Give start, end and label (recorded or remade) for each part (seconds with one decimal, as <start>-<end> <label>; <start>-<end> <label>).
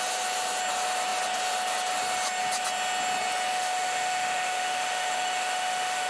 0.0-3.5 recorded; 3.5-6.1 remade